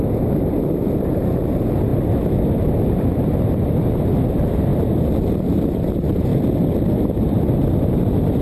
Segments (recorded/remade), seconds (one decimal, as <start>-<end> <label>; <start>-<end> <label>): 0.0-1.9 remade; 1.9-3.5 recorded; 3.5-6.3 remade; 6.3-7.9 recorded; 7.9-8.4 remade